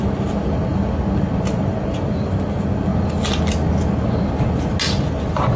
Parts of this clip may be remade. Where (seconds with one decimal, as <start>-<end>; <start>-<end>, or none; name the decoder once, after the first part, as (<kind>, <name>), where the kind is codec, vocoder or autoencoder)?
none